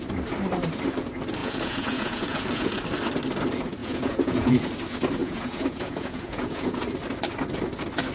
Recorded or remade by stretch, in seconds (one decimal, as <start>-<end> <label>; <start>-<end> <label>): 0.0-1.4 recorded; 1.4-2.8 remade; 2.8-3.8 recorded; 3.8-4.7 remade; 4.7-5.2 recorded; 5.2-6.8 remade; 6.8-8.1 recorded